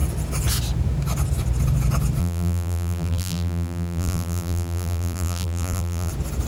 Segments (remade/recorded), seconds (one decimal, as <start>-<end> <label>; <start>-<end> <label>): 0.0-2.2 recorded; 2.2-6.1 remade; 6.1-6.5 recorded